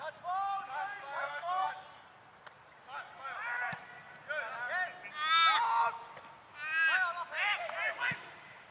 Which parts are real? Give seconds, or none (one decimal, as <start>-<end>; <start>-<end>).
0.0-1.2; 1.7-8.7